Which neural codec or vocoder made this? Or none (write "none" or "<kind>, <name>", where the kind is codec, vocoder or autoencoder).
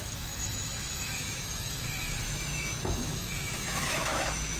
autoencoder, DAC-VAE